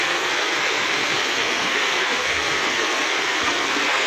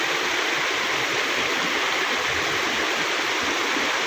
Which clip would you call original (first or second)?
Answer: second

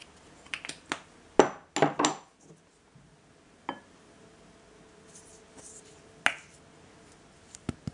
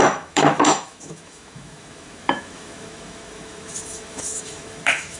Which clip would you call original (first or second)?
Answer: first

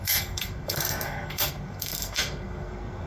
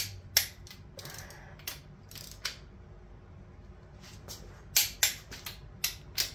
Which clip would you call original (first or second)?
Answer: second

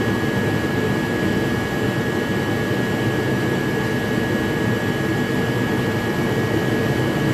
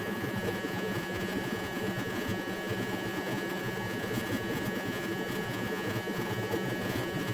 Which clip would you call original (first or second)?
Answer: first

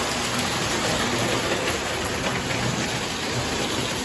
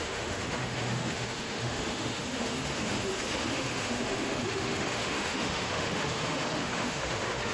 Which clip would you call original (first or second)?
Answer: first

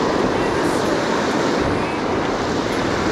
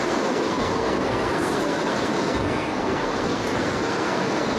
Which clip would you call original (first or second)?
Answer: first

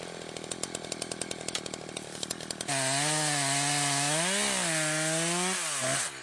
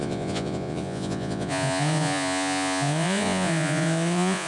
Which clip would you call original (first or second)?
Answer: first